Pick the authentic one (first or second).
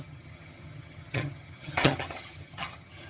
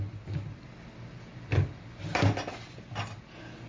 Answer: second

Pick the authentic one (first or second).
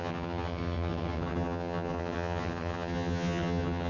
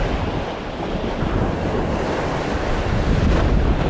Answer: second